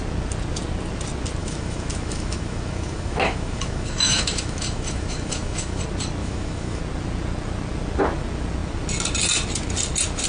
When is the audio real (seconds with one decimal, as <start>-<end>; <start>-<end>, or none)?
0.0-1.4; 5.8-6.2; 6.8-10.3